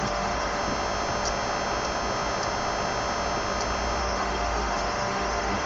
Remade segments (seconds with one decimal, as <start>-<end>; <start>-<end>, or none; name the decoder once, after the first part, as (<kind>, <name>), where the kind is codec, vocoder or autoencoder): 0.0-0.6 (autoencoder, DAC-VAE); 4.0-5.7